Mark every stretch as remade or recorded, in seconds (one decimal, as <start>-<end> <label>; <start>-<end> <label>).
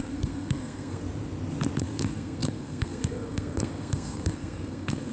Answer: 0.0-1.0 remade; 1.0-1.8 recorded; 1.8-5.1 remade